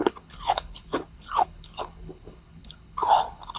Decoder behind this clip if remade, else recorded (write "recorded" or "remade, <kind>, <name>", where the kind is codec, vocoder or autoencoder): remade, codec, HILCodec